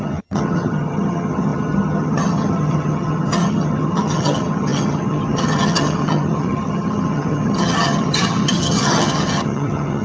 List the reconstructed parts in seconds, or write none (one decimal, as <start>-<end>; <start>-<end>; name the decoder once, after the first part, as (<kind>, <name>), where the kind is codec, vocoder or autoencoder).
0.0-10.0 (vocoder, HiFi-GAN)